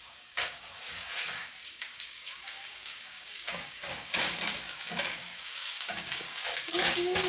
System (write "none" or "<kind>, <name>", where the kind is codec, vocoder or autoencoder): codec, DAC